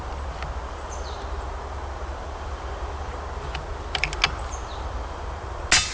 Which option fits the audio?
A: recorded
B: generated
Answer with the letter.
A